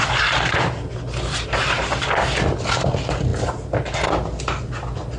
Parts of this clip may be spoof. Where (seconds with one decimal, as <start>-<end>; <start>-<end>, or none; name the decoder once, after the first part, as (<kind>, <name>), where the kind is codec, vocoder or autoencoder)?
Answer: none